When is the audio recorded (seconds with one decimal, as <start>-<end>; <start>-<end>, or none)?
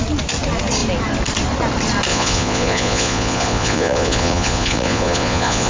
0.0-2.1